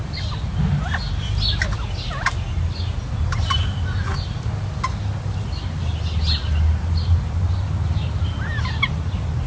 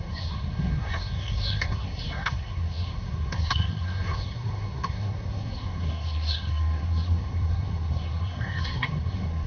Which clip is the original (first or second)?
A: first